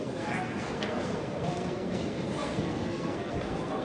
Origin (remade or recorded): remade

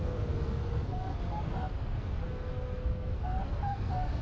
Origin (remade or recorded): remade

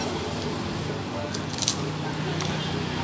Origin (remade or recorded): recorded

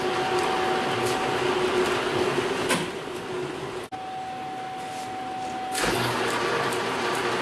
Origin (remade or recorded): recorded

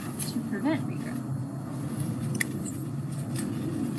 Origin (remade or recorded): recorded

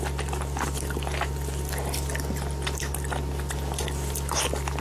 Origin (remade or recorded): recorded